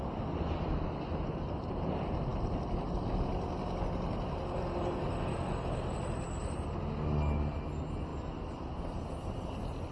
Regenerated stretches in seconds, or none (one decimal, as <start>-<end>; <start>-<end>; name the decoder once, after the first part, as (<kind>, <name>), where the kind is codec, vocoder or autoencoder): none